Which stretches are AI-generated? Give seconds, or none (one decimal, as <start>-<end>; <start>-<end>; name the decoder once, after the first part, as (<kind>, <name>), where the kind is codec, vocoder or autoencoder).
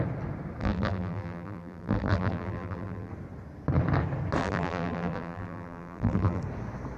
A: 0.6-3.1 (vocoder, BigVGAN v2); 4.4-6.4